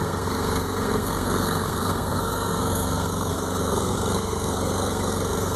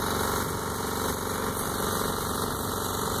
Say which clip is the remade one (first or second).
first